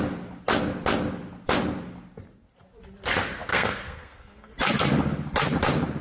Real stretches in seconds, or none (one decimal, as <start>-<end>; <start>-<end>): 0.0-3.5; 4.5-6.0